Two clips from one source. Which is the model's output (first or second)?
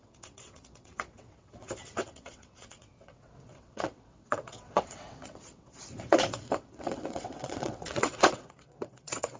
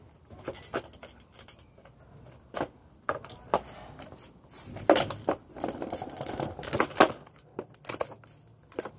first